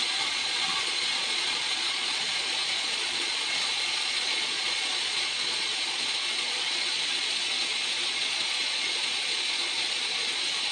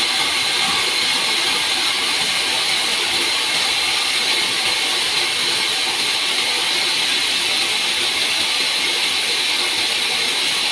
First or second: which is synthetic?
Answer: first